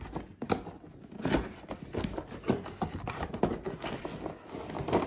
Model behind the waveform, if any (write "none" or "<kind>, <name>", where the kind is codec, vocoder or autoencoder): none